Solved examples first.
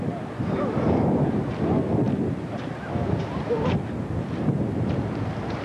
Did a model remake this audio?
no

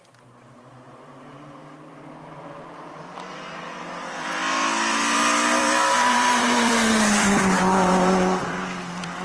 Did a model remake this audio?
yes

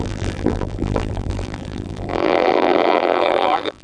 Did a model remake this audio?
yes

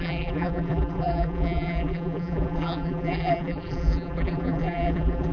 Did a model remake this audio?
yes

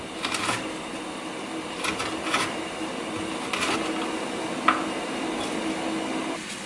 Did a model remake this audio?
no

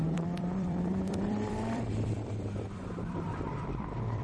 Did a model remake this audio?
yes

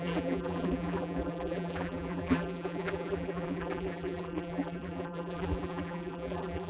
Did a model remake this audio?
yes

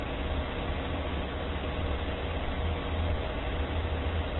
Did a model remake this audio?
no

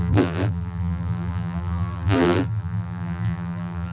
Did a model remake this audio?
yes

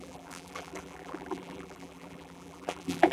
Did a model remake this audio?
yes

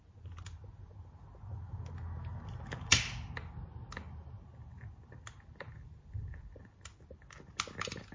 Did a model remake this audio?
no